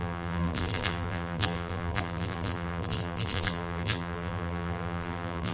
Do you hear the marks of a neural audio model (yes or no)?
yes